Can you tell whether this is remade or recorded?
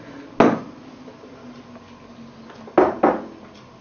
recorded